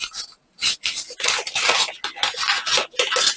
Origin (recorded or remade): recorded